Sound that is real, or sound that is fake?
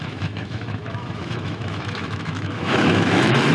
fake